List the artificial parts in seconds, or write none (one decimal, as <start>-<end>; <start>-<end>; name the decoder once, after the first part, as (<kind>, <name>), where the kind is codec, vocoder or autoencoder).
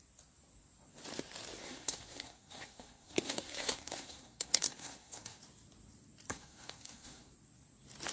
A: 1.6-5.4 (codec, SNAC); 6.3-7.3